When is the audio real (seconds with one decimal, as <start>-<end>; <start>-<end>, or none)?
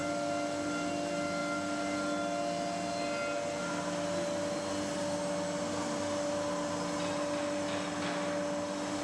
0.0-9.0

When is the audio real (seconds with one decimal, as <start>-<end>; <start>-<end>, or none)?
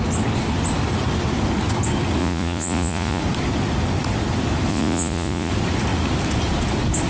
0.0-2.2; 3.2-4.7; 5.5-7.1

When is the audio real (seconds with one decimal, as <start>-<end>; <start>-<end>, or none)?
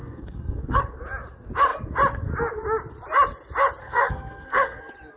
0.8-3.8; 4.8-5.2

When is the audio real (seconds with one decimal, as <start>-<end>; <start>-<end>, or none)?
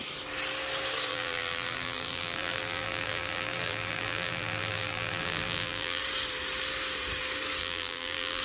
0.0-1.1; 6.0-7.6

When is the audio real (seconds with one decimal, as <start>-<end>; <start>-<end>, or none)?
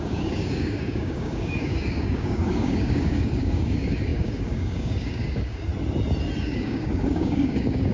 5.7-6.4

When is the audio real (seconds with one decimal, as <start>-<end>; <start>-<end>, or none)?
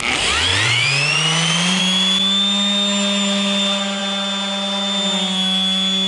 0.0-0.5; 1.8-6.1